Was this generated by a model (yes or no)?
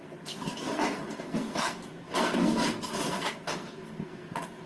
yes